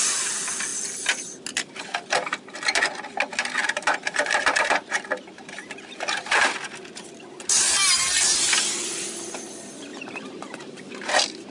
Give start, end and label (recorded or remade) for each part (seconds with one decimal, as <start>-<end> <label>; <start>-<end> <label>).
0.0-3.6 recorded; 3.6-6.6 remade; 6.6-9.9 recorded; 9.9-11.1 remade; 11.1-11.5 recorded